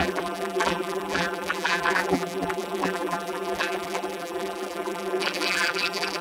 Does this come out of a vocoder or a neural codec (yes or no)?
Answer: yes